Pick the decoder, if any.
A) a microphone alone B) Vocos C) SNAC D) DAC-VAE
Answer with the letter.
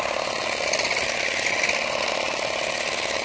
A